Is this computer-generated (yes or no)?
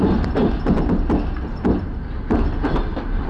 no